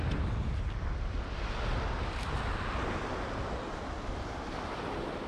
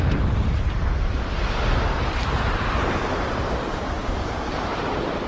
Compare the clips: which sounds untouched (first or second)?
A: first